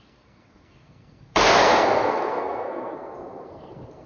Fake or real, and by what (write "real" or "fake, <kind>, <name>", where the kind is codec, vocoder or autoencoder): fake, codec, SNAC